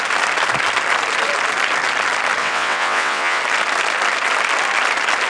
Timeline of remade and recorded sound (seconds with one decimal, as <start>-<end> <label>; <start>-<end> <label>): 0.0-2.4 recorded; 2.4-3.4 remade; 3.4-5.3 recorded